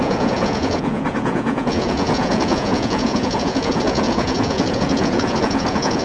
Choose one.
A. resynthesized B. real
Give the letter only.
A